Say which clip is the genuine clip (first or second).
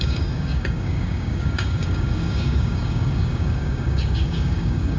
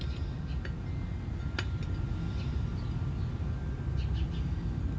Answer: second